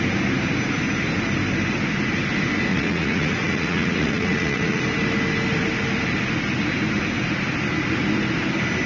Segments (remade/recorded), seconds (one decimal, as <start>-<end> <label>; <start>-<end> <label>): 0.0-2.7 recorded; 2.7-4.8 remade; 4.8-8.9 recorded